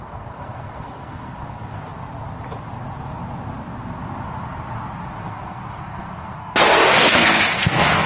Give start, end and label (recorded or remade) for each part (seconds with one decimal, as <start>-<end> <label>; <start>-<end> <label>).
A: 0.0-1.9 remade; 1.9-5.2 recorded; 5.2-8.1 remade